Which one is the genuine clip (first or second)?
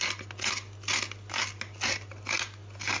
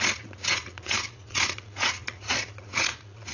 first